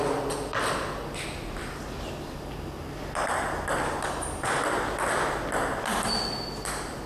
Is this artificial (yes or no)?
no